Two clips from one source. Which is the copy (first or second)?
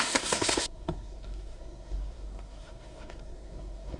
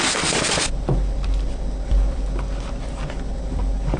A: first